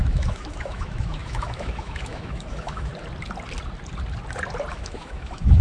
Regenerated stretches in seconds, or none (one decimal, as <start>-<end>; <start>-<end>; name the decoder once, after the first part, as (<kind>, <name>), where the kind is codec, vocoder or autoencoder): 0.0-2.9 (autoencoder, DAC-VAE); 4.7-5.6